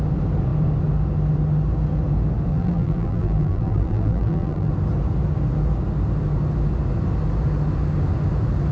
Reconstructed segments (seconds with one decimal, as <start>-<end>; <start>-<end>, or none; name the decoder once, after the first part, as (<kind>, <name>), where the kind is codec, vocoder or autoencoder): 2.5-4.7 (vocoder, BigVGAN v2)